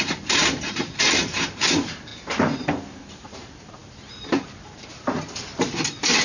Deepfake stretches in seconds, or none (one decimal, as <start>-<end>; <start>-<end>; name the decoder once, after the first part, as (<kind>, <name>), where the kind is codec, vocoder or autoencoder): 0.0-5.5 (vocoder, BigVGAN v2)